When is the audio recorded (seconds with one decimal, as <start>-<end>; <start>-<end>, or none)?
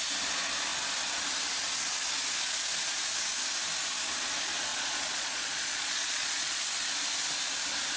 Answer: 0.0-4.7; 6.6-8.0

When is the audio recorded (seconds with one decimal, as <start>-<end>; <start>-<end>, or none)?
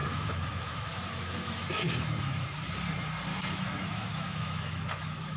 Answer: 2.7-3.3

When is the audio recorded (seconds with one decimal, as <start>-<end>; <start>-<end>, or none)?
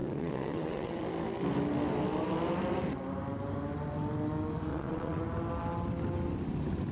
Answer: 1.0-4.7; 5.2-6.9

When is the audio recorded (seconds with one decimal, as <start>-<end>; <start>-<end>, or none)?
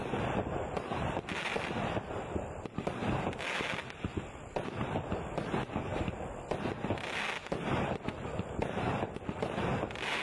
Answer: 0.0-10.2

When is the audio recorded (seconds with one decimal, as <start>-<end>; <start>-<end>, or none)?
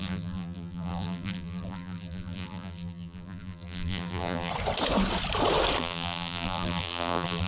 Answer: 4.5-5.8